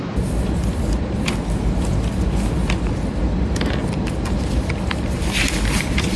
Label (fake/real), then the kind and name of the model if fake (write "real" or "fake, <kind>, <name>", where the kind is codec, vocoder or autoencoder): real